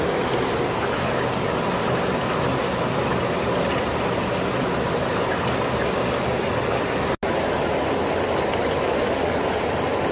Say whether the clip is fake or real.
real